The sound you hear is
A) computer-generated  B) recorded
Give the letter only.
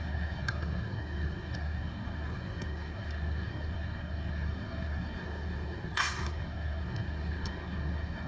A